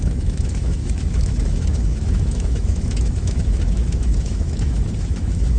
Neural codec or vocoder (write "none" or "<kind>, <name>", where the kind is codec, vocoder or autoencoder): autoencoder, DAC-VAE